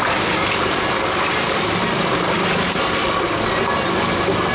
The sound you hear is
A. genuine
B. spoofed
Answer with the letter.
A